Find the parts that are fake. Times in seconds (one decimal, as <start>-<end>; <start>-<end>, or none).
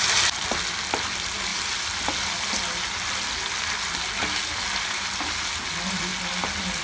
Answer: none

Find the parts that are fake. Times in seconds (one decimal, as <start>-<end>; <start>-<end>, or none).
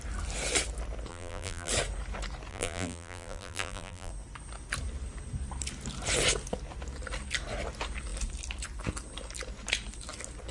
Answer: 1.1-1.7; 2.5-4.1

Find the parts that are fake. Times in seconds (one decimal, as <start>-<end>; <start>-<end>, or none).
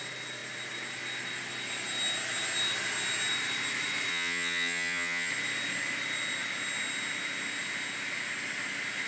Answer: 4.1-5.3